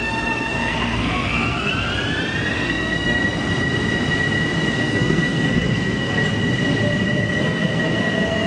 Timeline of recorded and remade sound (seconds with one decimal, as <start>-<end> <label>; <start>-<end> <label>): 0.0-1.7 remade; 1.7-2.5 recorded; 2.5-3.2 remade; 3.2-4.7 recorded; 4.7-6.2 remade; 6.2-7.2 recorded; 7.2-8.5 remade